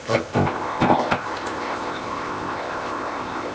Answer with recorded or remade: remade